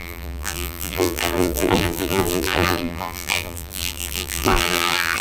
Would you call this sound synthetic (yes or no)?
yes